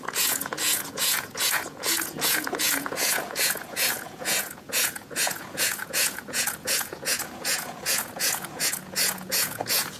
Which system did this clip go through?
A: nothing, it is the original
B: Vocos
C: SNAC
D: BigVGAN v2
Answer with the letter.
B